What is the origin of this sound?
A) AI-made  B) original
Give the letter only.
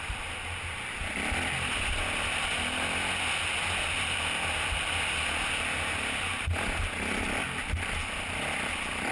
B